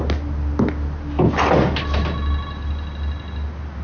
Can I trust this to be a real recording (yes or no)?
yes